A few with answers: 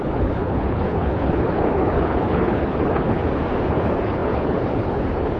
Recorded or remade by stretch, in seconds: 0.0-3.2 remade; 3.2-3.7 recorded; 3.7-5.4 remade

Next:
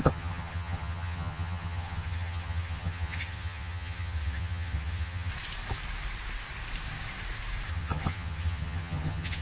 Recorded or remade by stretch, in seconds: 0.0-5.3 remade; 5.3-7.7 recorded; 7.7-9.4 remade

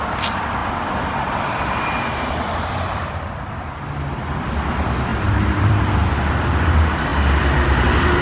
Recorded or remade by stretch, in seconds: 0.0-0.6 recorded; 0.6-3.1 remade; 3.1-5.1 recorded; 5.1-6.0 remade; 6.0-8.2 recorded

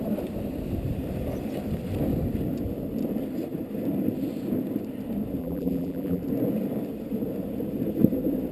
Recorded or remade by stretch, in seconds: 0.0-5.4 recorded; 5.4-6.2 remade; 6.2-8.5 recorded

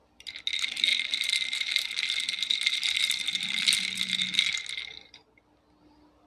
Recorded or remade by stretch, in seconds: 0.0-0.9 recorded; 0.9-3.4 remade; 3.4-6.3 recorded